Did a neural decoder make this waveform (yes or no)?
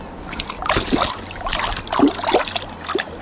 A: no